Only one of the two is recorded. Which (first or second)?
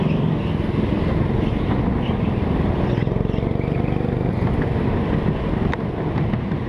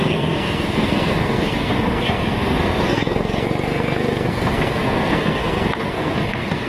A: first